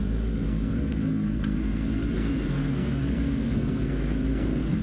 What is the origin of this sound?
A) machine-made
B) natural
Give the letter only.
A